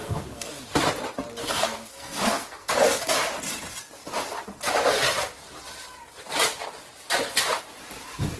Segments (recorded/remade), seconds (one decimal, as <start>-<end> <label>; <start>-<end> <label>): 0.0-0.6 remade; 0.6-1.4 recorded; 1.4-2.7 remade; 2.7-8.4 recorded